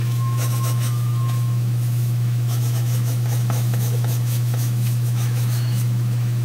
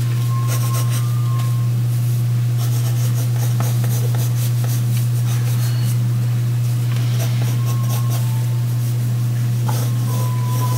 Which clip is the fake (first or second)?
first